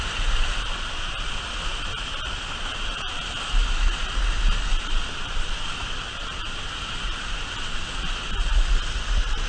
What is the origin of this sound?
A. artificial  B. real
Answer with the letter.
B